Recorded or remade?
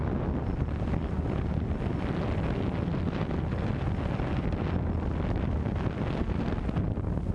recorded